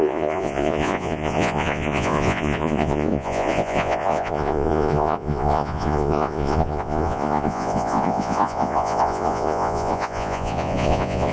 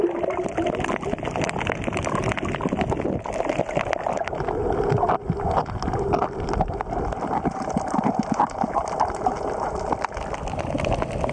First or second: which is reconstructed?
first